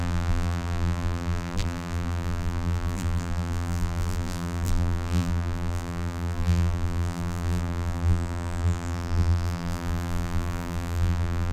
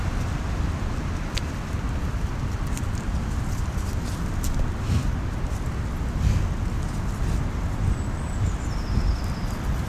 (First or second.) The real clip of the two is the second